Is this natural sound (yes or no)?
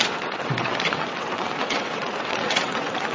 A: no